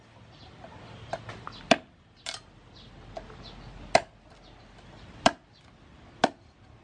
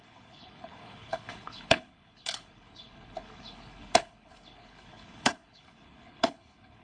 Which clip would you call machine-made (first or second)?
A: second